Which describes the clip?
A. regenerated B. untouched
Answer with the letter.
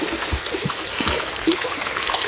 A